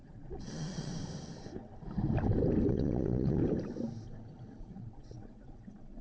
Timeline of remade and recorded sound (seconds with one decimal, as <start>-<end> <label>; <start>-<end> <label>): 0.0-0.9 remade; 0.9-2.7 recorded; 2.7-3.4 remade; 3.4-4.6 recorded; 4.6-6.0 remade